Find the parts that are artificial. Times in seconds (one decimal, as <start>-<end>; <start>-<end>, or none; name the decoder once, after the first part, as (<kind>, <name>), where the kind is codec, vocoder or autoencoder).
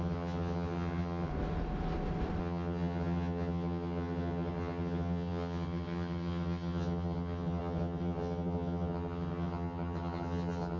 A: 0.0-1.3 (vocoder, HiFi-GAN); 2.4-10.8